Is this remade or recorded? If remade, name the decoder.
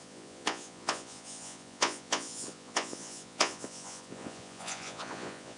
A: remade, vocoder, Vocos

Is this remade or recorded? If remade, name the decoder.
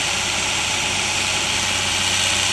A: remade, vocoder, BigVGAN v2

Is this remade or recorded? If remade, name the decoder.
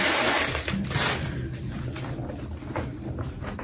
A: recorded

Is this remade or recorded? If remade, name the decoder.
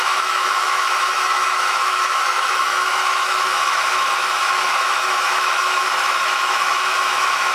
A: remade, autoencoder, DAC-VAE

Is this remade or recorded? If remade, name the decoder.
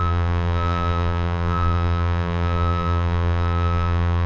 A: remade, vocoder, BigVGAN v2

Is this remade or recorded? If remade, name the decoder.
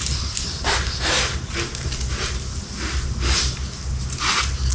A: recorded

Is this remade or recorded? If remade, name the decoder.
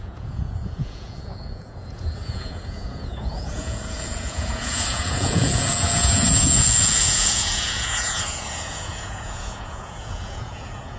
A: remade, vocoder, Vocos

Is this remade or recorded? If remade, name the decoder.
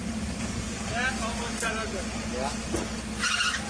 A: recorded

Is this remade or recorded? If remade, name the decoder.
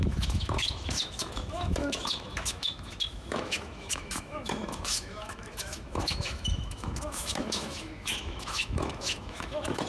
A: remade, autoencoder, DAC-VAE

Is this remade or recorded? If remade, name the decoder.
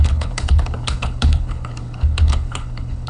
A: remade, codec, HILCodec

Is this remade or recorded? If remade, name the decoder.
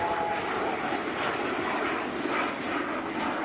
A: recorded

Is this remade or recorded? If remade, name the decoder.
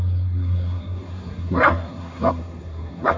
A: remade, codec, SNAC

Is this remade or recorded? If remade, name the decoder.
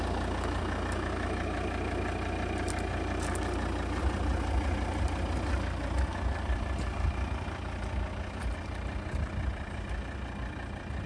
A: recorded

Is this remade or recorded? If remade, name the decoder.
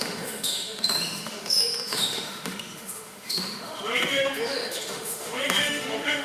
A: remade, autoencoder, DAC-VAE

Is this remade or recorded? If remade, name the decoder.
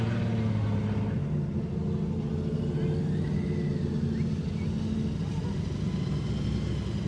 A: recorded